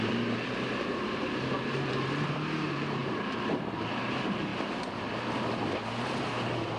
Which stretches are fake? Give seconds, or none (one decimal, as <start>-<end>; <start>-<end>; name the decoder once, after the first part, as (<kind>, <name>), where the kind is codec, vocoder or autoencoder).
0.0-4.5 (vocoder, BigVGAN v2); 6.2-6.8